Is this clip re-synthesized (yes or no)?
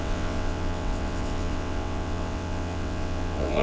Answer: yes